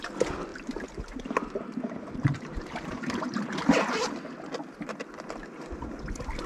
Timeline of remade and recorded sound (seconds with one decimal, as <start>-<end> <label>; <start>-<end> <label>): 0.0-0.5 recorded; 0.5-3.5 remade; 3.5-6.5 recorded